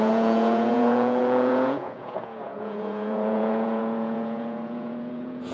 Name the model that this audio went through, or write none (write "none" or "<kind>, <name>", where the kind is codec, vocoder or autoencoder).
vocoder, Vocos